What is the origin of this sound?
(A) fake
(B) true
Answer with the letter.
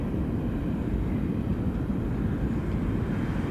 B